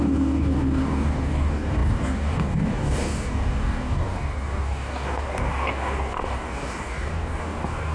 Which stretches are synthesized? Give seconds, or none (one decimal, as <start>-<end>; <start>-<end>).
0.0-7.9